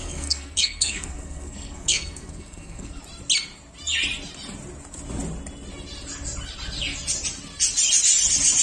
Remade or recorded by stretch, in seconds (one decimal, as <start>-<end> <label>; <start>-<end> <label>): 0.0-3.0 remade; 3.0-8.6 recorded